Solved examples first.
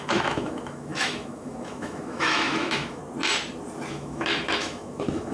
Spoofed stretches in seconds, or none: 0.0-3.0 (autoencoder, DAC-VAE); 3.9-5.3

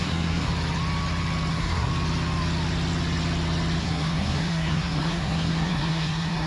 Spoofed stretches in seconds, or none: 0.0-0.5 (codec, SNAC); 1.5-1.9; 3.8-6.5

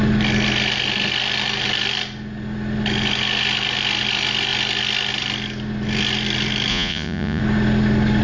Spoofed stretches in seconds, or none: 6.7-7.4 (vocoder, Vocos)

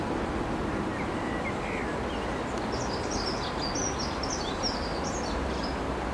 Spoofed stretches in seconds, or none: none

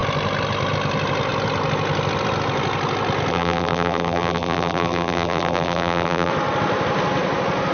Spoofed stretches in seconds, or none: 3.3-6.3 (vocoder, BigVGAN v2)